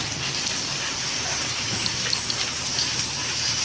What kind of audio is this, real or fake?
real